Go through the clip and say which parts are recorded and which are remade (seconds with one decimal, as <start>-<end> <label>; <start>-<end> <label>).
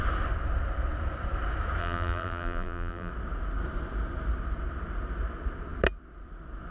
0.0-1.8 recorded; 1.8-3.1 remade; 3.1-6.7 recorded